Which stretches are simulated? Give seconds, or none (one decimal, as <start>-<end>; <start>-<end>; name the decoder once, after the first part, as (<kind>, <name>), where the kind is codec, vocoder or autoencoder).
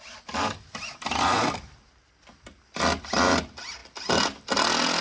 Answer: none